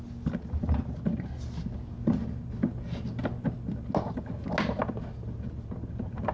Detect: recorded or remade recorded